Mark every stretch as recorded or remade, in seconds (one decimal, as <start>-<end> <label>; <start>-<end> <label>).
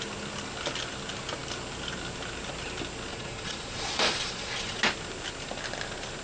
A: 0.0-3.1 recorded; 3.1-4.8 remade; 4.8-6.2 recorded